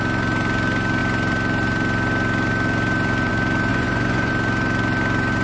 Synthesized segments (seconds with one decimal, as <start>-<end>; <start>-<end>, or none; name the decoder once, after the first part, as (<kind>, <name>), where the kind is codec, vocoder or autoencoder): 3.7-4.3 (vocoder, Vocos)